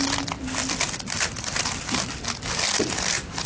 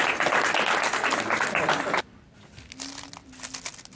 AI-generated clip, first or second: first